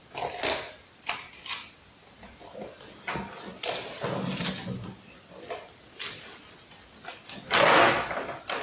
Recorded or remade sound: recorded